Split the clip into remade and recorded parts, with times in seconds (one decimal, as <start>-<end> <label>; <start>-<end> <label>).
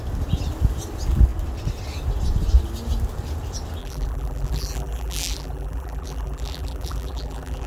0.0-3.8 recorded; 3.8-7.7 remade